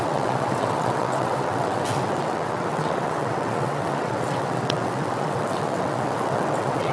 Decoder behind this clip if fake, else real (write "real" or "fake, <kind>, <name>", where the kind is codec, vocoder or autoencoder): fake, vocoder, WaveNeXt